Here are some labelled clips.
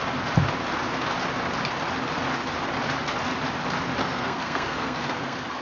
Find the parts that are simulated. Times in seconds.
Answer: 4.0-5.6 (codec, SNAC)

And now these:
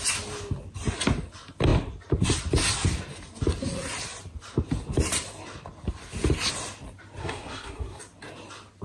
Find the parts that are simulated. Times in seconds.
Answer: 7.2-8.0 (codec, SNAC)

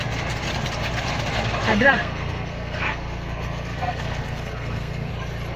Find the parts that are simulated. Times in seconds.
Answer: 1.7-5.1 (codec, SNAC)

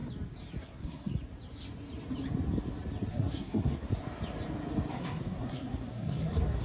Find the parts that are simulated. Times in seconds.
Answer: 0.6-1.1 (codec, SNAC); 3.1-3.9; 5.0-6.6

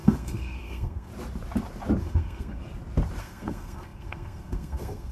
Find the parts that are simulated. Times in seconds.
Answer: 0.0-1.1 (codec, SNAC); 2.0-2.6; 3.2-5.1